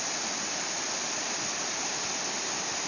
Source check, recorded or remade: recorded